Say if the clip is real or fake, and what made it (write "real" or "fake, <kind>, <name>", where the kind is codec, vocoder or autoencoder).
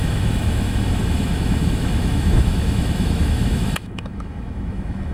fake, autoencoder, DAC-VAE